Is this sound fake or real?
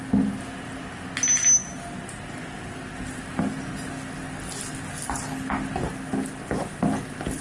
real